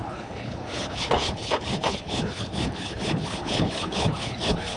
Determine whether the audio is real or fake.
fake